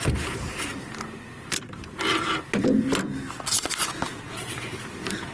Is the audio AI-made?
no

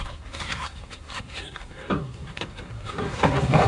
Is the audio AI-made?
yes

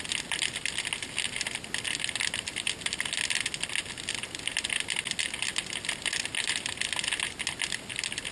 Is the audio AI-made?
no